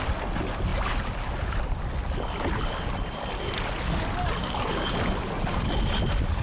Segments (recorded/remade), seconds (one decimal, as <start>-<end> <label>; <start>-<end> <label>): 0.0-6.4 recorded